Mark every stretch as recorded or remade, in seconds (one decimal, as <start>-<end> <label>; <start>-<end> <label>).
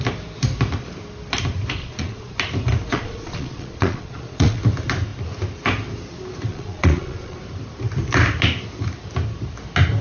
0.0-1.8 recorded; 1.8-2.3 remade; 2.3-2.9 recorded; 2.9-4.6 remade; 4.6-6.5 recorded; 6.5-7.4 remade; 7.4-10.0 recorded